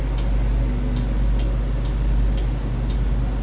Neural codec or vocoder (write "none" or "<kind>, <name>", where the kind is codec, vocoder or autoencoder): none